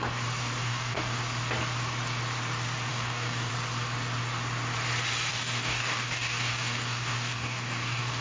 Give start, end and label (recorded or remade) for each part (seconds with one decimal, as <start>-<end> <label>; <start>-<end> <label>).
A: 0.0-0.6 recorded; 0.6-1.2 remade; 1.2-2.9 recorded; 2.9-3.5 remade; 3.5-5.3 recorded; 5.3-8.2 remade